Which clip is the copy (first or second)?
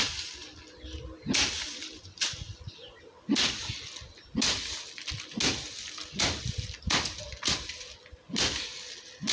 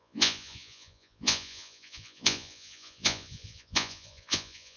second